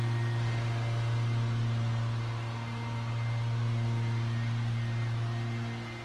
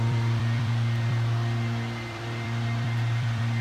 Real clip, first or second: first